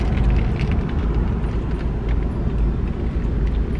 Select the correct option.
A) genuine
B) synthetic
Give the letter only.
A